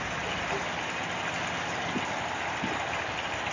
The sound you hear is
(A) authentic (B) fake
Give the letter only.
A